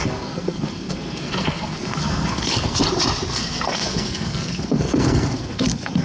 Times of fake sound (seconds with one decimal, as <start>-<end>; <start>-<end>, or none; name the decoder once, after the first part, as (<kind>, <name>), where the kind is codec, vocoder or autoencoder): 0.0-2.8 (codec, SNAC); 3.3-6.0